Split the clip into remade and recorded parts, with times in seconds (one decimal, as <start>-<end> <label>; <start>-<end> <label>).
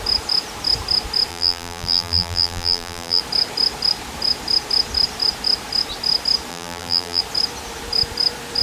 0.0-1.3 recorded; 1.3-3.2 remade; 3.2-6.5 recorded; 6.5-7.2 remade; 7.2-8.6 recorded